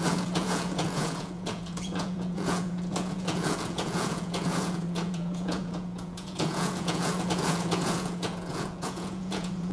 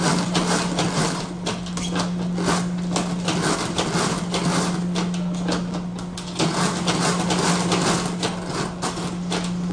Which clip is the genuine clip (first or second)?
second